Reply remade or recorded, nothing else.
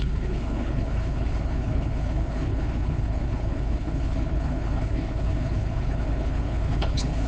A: remade